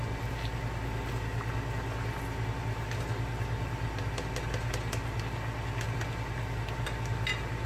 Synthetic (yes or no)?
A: no